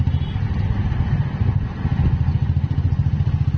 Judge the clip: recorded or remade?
recorded